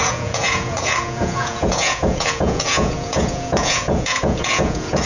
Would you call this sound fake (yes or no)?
yes